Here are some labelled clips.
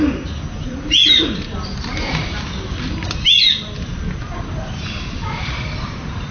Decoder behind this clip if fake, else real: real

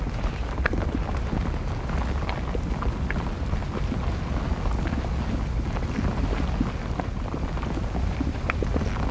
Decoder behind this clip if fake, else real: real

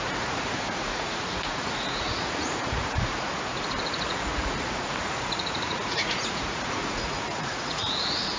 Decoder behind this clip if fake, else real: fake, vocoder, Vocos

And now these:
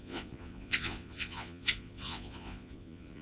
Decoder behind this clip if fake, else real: fake, vocoder, Vocos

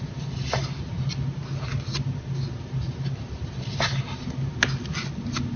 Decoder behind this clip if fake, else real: real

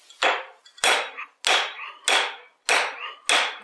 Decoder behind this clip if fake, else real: real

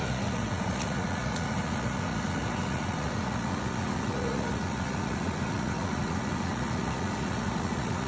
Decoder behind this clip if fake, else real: fake, vocoder, Vocos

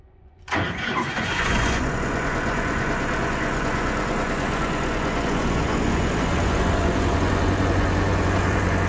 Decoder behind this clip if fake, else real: fake, vocoder, Vocos